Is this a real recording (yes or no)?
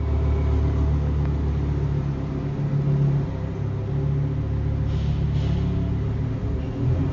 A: yes